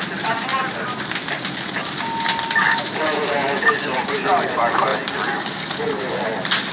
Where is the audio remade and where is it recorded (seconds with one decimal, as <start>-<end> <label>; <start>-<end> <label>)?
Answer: 0.0-0.5 recorded; 0.5-4.5 remade; 4.5-6.7 recorded